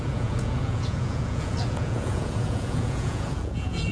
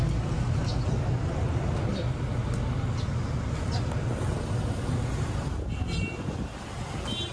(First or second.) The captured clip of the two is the second